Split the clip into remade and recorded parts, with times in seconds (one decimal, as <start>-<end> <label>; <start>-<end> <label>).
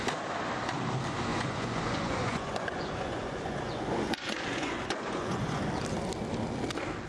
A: 0.0-1.3 recorded; 1.3-5.6 remade; 5.6-7.1 recorded